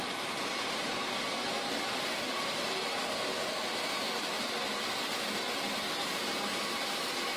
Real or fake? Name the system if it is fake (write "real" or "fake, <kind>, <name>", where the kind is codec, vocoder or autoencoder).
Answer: real